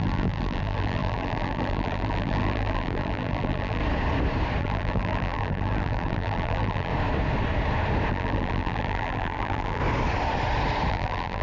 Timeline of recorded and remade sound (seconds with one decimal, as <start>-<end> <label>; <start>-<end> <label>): 0.0-3.8 remade; 3.8-4.6 recorded; 4.6-6.9 remade; 6.9-8.1 recorded; 8.1-9.8 remade; 9.8-10.9 recorded; 10.9-11.4 remade